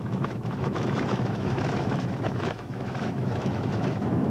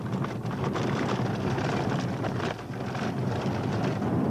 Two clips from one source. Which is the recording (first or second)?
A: second